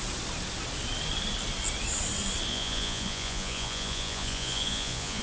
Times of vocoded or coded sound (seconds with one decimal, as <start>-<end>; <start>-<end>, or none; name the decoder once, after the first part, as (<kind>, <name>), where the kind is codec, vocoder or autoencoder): 2.5-5.2 (vocoder, Vocos)